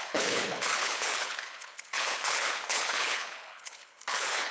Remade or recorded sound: remade